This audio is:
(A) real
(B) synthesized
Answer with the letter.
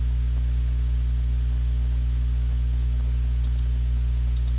A